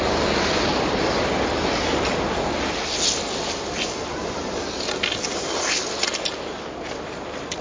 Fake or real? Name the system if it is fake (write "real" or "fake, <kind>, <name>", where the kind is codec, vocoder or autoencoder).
real